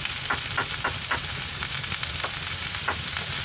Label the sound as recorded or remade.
recorded